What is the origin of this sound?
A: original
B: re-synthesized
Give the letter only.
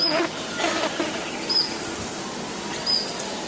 A